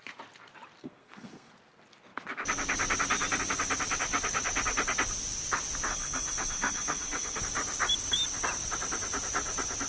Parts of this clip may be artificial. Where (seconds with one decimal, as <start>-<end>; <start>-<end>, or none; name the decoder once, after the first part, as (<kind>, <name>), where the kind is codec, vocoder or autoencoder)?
0.8-1.5 (codec, SNAC); 5.9-7.4